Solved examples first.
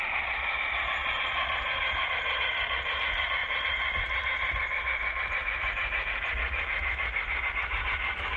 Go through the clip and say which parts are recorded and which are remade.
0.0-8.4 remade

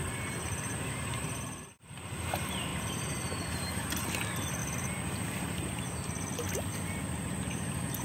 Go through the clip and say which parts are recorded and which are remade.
0.0-4.6 remade; 4.6-8.0 recorded

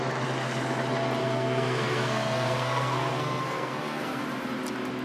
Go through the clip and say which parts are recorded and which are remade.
0.0-1.2 recorded; 1.2-4.2 remade; 4.2-5.0 recorded

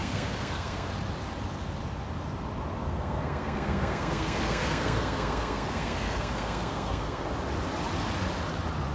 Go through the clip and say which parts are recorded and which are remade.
0.0-0.9 remade; 0.9-2.8 recorded; 2.8-7.3 remade; 7.3-8.9 recorded

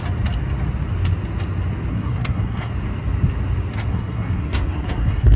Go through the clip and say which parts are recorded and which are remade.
0.0-1.9 recorded; 1.9-2.7 remade; 2.7-3.9 recorded; 3.9-5.4 remade

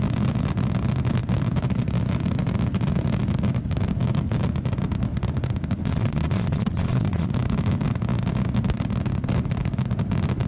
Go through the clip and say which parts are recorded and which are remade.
0.0-5.8 recorded; 5.8-7.3 remade; 7.3-10.5 recorded

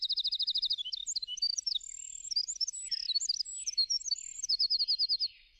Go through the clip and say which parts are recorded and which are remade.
0.0-1.5 recorded; 1.5-4.8 remade; 4.8-5.6 recorded

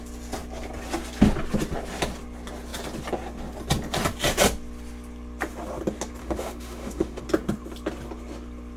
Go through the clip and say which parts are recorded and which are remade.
0.0-6.2 recorded; 6.2-7.2 remade; 7.2-8.8 recorded